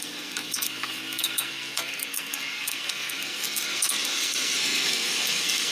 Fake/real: fake